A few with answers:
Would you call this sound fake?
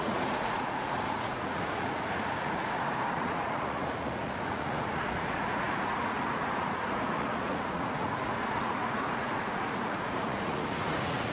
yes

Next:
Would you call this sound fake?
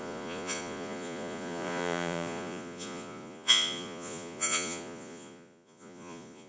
yes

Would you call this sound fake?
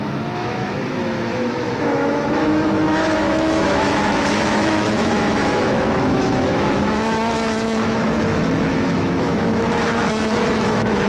yes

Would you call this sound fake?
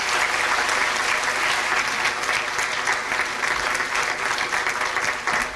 no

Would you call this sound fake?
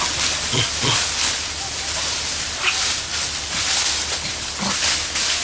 no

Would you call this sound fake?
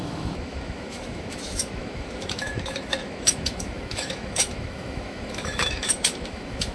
yes